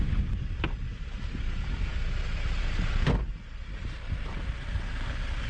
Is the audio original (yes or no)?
yes